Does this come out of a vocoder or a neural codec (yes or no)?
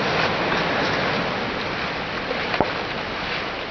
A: no